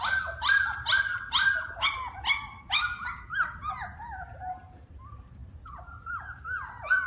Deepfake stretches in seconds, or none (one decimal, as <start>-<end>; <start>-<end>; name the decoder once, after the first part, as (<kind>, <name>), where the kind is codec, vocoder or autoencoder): none